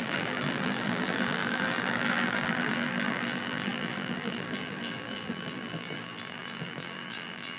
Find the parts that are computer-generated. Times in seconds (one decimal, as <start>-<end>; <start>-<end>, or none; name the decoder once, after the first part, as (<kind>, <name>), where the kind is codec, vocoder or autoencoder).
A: 0.0-7.6 (vocoder, BigVGAN v2)